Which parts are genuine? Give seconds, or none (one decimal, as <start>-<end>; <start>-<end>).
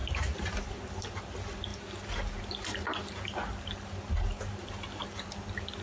0.0-5.8